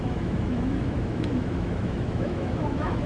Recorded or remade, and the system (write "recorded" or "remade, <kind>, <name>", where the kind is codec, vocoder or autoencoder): remade, autoencoder, DAC-VAE